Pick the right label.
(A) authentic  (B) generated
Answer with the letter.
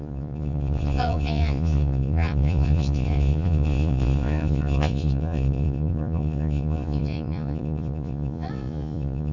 B